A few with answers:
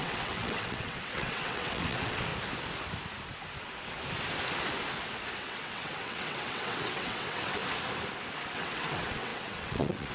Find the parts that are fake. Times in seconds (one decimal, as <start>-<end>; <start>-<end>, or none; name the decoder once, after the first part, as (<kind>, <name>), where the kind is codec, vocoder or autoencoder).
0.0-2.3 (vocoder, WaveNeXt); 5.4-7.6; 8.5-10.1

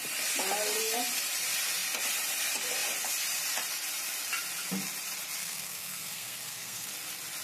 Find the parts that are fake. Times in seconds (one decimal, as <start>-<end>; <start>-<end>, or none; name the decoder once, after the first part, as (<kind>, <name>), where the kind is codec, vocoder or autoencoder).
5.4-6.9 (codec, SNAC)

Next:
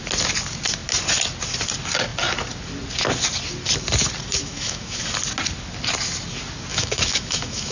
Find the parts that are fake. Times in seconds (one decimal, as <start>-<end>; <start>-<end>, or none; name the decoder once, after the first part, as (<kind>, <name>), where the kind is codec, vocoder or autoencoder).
4.4-5.0 (autoencoder, DAC-VAE); 6.7-7.7

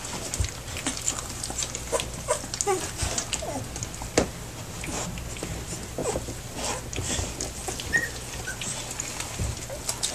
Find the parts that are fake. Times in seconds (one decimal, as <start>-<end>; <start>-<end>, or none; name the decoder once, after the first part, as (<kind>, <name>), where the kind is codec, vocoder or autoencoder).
none

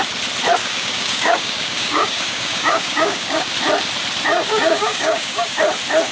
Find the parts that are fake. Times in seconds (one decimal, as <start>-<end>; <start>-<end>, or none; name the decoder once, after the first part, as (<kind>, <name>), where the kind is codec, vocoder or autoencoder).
0.6-3.5 (codec, DAC); 4.3-5.6

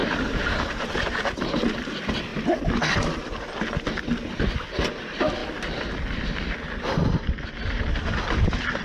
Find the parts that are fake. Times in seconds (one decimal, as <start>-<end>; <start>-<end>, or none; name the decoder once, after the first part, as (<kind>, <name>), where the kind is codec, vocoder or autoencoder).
0.0-2.3 (vocoder, BigVGAN v2); 4.9-8.8